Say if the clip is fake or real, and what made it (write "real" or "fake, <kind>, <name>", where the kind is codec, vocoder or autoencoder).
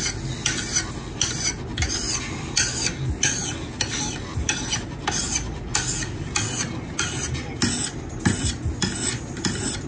real